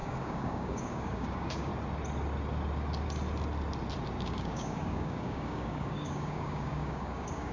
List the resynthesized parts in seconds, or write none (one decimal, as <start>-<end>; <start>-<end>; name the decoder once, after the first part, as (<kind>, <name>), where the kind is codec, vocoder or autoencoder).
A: 0.0-1.7 (codec, DAC); 4.2-7.5

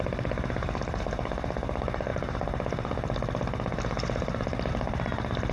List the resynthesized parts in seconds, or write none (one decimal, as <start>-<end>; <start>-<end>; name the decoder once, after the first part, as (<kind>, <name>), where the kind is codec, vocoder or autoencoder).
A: none